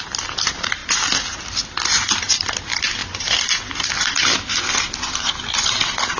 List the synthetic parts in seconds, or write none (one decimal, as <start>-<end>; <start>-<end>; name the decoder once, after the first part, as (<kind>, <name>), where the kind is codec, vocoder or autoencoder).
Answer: 3.0-3.6 (vocoder, BigVGAN v2)